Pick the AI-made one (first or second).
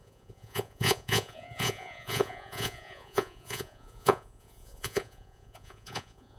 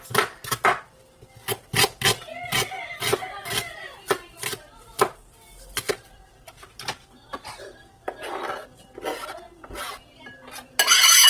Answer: first